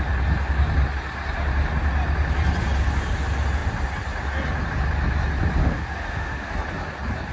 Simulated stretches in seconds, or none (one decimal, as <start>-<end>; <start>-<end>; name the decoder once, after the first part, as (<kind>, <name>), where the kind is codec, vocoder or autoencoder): 5.6-6.5 (autoencoder, DAC-VAE)

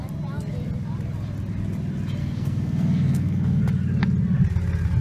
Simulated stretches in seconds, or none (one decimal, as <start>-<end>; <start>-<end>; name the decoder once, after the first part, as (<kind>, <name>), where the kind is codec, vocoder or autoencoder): 2.2-3.6 (codec, SNAC)

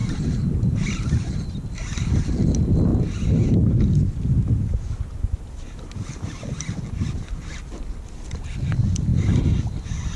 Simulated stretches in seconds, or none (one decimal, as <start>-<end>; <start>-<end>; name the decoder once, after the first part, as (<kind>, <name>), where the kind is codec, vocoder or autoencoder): 0.0-1.3 (vocoder, BigVGAN v2)

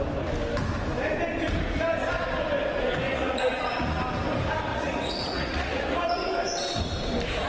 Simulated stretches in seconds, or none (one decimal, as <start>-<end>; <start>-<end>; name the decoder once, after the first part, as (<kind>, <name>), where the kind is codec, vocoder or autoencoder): 3.1-4.0 (vocoder, Vocos); 4.7-6.3

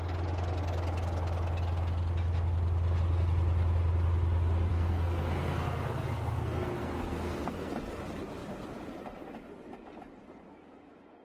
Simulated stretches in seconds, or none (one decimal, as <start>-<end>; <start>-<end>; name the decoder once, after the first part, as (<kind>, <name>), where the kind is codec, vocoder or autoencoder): 4.7-7.7 (codec, SNAC)